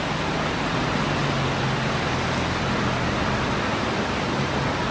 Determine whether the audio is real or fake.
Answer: real